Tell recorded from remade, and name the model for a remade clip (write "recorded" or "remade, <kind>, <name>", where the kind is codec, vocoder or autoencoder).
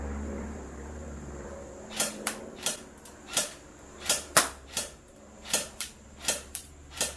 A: remade, vocoder, BigVGAN v2